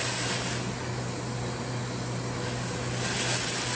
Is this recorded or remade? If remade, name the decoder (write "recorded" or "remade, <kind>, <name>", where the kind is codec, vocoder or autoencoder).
recorded